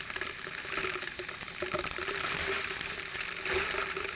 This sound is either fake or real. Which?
fake